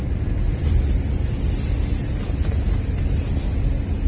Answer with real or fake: real